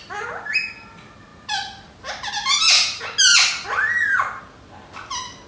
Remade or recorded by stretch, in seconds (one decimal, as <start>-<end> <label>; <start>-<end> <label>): 0.0-5.5 recorded